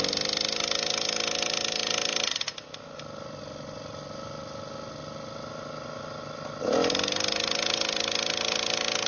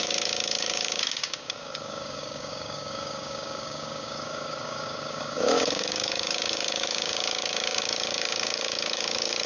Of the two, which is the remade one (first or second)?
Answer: second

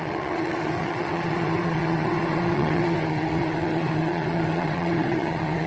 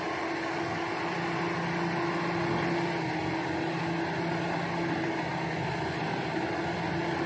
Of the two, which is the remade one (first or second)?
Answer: first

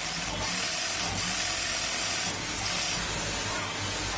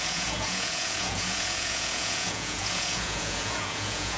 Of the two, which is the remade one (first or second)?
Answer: second